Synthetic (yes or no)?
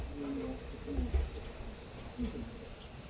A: no